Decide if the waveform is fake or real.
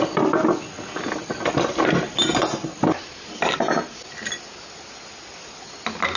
real